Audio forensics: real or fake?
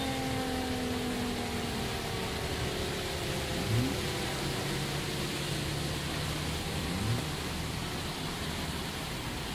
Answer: real